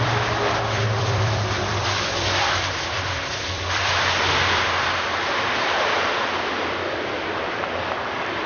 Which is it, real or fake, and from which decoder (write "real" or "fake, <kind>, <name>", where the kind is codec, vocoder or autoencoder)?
fake, vocoder, BigVGAN v2